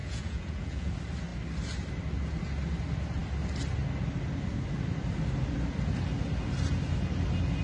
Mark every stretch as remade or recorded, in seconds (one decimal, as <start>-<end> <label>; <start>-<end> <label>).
0.0-0.9 remade; 0.9-7.6 recorded